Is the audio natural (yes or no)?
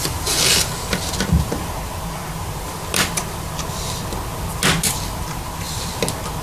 yes